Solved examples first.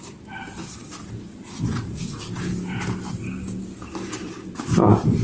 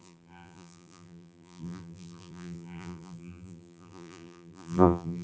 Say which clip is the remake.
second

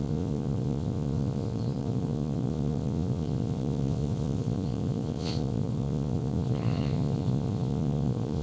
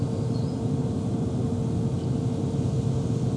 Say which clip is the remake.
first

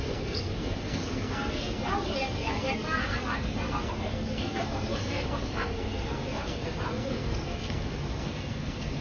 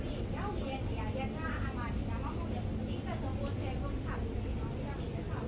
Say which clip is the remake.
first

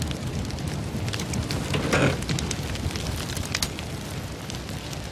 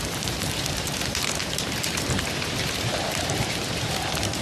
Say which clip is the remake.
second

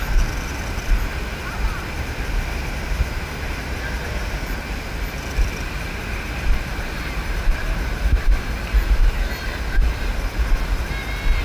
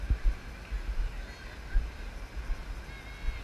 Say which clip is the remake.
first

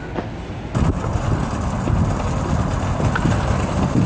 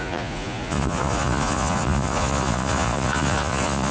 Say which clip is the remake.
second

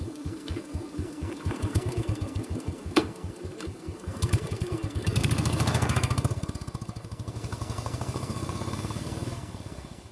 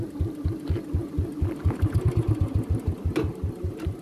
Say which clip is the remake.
first